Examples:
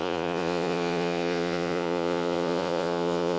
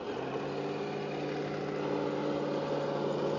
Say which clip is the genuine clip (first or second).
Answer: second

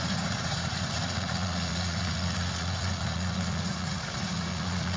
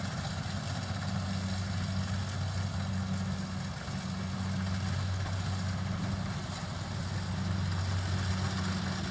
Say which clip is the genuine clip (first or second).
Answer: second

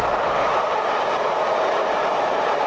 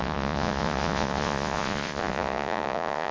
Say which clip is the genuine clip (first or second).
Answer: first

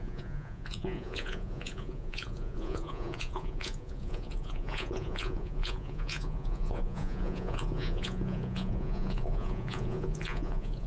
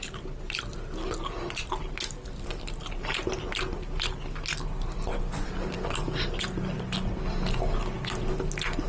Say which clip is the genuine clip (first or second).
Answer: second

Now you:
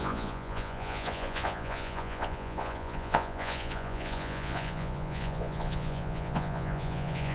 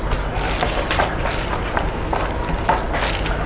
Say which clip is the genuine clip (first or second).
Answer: second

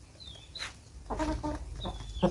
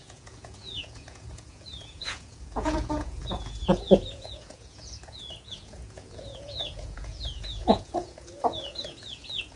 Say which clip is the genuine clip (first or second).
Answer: first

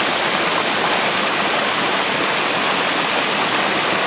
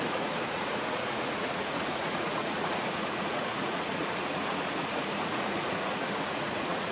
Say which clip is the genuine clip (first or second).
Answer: first